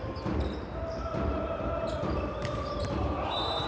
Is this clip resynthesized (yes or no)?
yes